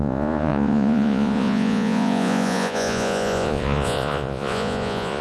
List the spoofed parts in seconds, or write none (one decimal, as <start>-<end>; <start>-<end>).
0.0-5.2